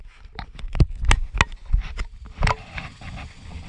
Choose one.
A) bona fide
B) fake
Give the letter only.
A